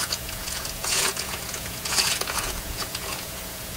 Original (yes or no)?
no